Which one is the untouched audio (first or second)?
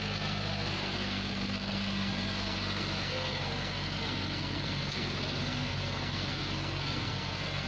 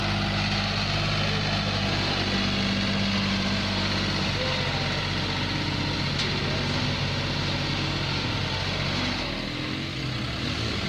second